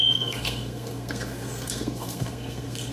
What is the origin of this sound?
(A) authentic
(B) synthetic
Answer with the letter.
B